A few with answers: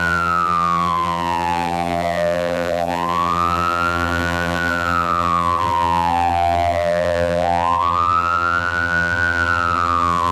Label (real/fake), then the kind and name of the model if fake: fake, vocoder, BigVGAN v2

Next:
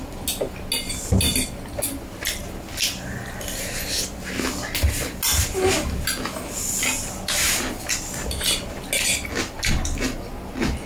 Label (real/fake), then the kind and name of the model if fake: real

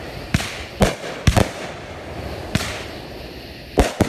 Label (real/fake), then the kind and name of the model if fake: real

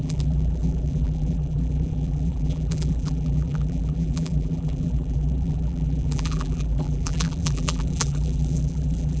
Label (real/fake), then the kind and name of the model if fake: fake, vocoder, BigVGAN v2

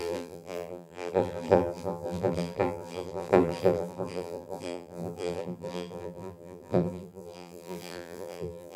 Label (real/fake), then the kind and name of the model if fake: fake, vocoder, BigVGAN v2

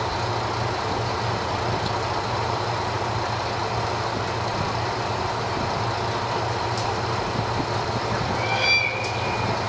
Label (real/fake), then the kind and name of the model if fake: real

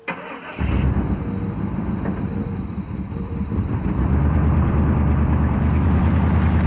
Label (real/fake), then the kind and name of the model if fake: fake, vocoder, BigVGAN v2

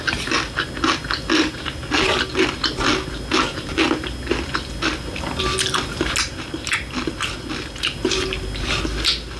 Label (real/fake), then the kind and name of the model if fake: real